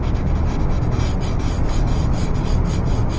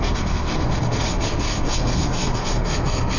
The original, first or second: first